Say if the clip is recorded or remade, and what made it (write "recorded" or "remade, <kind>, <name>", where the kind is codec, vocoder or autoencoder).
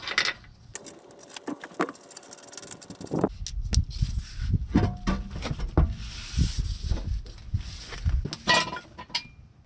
recorded